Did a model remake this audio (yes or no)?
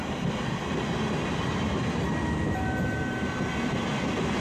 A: no